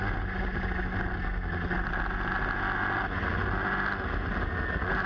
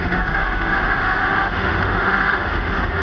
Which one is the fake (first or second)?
second